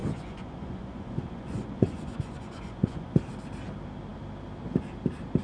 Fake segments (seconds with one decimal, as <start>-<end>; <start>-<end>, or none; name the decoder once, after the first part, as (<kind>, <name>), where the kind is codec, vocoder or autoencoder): 0.0-3.2 (vocoder, Vocos)